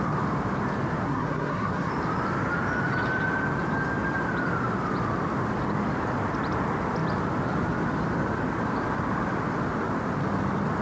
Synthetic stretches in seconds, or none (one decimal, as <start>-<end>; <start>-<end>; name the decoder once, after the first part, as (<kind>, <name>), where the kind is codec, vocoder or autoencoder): 1.0-1.9 (codec, SNAC)